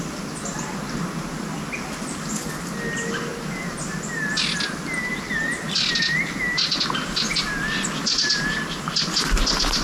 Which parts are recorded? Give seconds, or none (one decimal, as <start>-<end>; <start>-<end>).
0.0-9.8